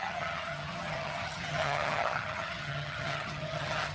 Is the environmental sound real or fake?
fake